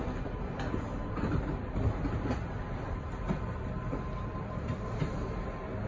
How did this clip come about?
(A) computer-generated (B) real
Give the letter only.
B